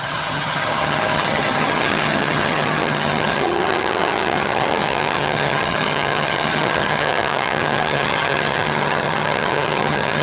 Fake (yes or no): yes